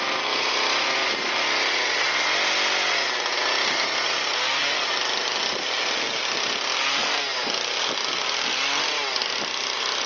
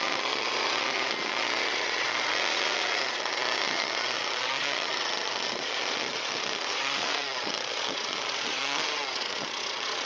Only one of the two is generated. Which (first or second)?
second